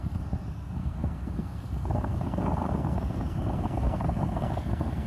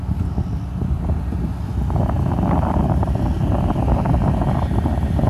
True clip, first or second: second